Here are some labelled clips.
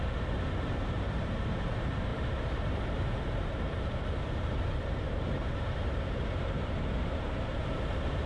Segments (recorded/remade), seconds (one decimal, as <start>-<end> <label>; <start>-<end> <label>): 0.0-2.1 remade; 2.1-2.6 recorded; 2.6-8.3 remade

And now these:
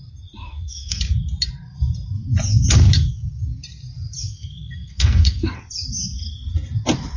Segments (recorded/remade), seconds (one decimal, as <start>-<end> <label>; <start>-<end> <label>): 0.0-0.4 recorded; 0.4-1.0 remade; 1.0-4.3 recorded; 4.3-5.6 remade; 5.6-7.2 recorded

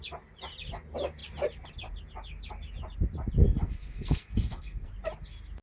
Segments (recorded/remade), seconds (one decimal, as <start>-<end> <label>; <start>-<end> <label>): 0.0-3.4 recorded; 3.4-4.9 remade; 4.9-5.6 recorded

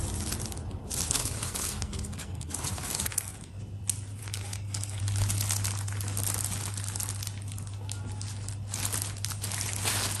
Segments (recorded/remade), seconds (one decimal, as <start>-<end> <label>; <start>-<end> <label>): 0.0-1.2 recorded; 1.2-3.6 remade; 3.6-4.2 recorded; 4.2-5.0 remade; 5.0-10.2 recorded